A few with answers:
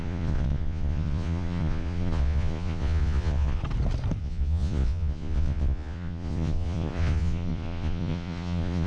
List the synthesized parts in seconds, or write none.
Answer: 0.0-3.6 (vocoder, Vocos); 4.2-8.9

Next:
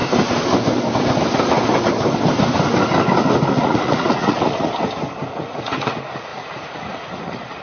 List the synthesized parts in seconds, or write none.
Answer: 3.5-4.7 (vocoder, Vocos); 5.3-7.6

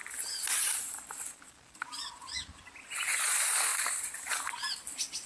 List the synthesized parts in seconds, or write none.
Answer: none

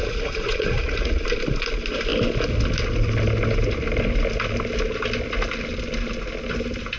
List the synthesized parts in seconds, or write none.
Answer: 0.0-1.2 (vocoder, Vocos)

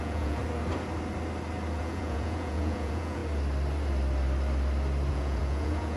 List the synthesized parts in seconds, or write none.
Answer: 0.0-0.4 (vocoder, Vocos); 1.8-3.2; 5.1-6.0

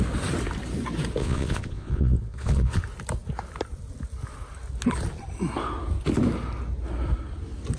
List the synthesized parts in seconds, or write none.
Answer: 1.2-2.8 (vocoder, Vocos)